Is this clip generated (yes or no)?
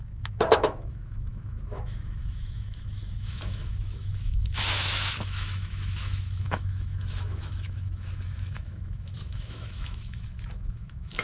yes